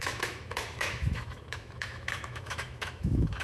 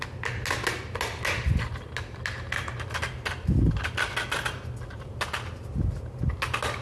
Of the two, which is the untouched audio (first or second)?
second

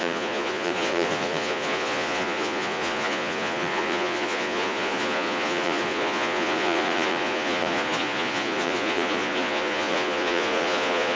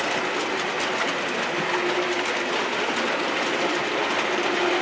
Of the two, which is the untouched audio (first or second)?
second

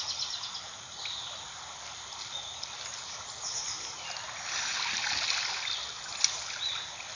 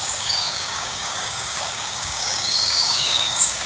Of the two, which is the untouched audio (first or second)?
first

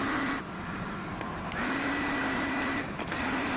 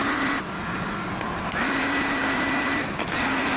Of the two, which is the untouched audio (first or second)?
second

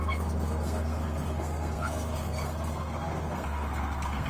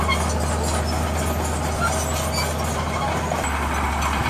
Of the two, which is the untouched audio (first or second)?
second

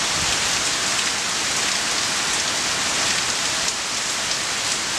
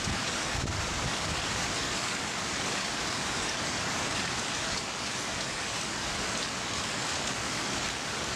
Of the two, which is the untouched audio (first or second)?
first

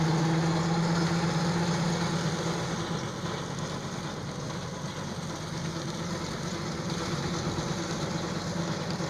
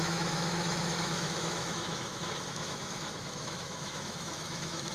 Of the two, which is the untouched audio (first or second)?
first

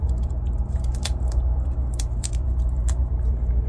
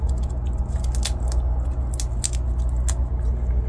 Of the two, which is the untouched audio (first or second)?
second